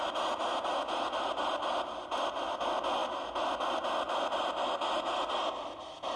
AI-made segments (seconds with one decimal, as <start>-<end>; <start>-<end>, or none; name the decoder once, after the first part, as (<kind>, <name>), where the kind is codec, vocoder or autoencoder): none